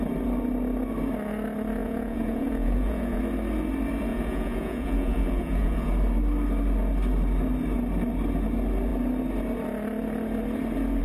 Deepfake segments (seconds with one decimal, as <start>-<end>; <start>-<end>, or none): 1.8-3.2; 4.1-5.9